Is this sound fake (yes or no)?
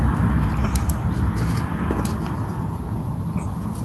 no